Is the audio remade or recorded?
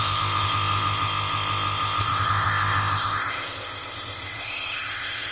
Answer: remade